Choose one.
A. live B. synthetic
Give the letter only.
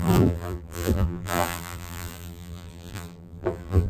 B